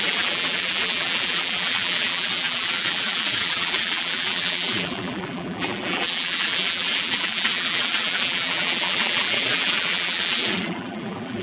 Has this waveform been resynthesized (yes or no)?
yes